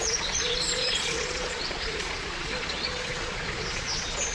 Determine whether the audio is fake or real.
fake